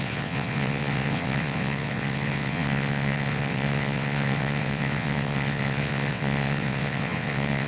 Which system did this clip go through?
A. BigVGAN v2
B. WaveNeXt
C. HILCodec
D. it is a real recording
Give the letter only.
B